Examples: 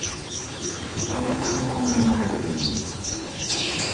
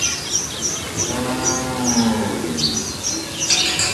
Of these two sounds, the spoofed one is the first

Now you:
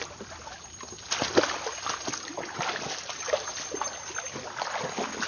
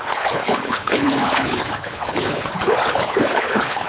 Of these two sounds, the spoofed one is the second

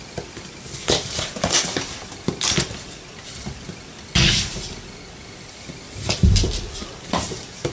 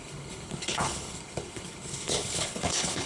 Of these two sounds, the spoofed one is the second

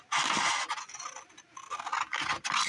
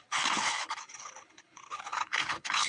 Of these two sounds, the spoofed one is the second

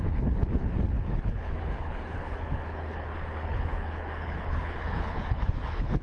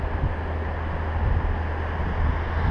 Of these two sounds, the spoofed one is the first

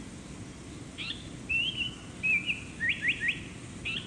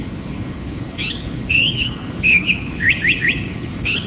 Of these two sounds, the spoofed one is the second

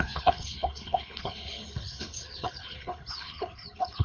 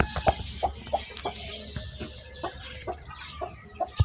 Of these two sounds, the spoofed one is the first